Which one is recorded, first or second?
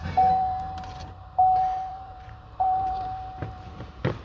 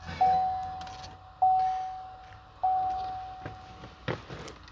second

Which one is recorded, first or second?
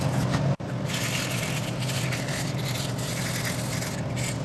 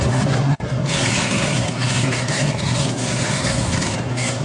first